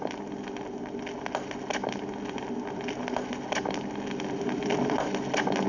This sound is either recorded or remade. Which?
recorded